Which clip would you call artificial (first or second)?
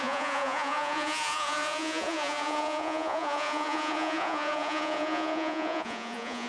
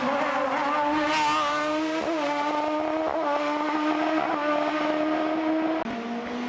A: first